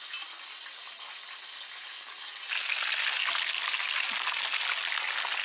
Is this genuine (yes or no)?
yes